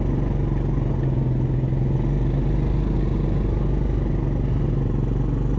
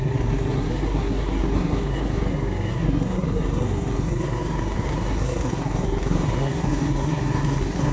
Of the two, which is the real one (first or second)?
first